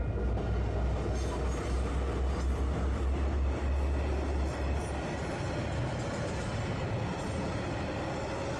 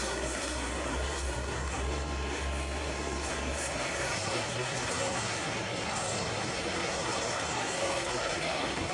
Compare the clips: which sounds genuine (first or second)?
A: first